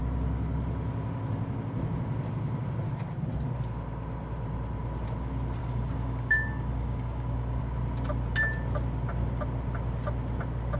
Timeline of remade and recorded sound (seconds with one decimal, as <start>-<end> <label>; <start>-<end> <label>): 0.0-5.6 recorded; 5.6-7.6 remade; 7.6-10.8 recorded